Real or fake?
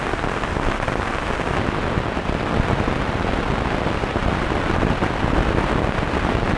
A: real